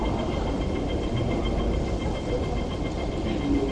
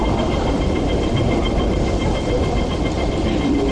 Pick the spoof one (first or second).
second